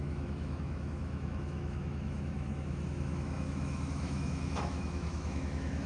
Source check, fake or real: fake